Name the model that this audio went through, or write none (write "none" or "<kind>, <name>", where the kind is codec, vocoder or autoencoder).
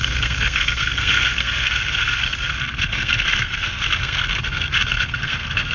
codec, SNAC